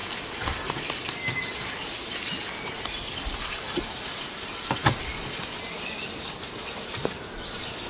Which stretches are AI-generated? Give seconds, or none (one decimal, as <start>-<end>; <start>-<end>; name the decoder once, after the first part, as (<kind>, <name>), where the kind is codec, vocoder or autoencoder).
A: 4.0-4.8 (vocoder, BigVGAN v2); 6.8-7.9